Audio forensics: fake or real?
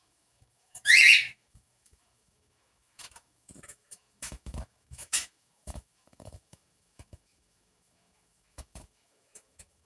fake